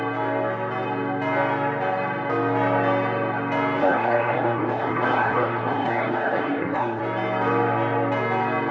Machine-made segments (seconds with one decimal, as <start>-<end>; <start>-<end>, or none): 3.8-7.0